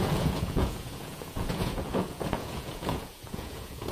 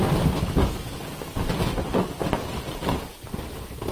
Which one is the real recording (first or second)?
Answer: second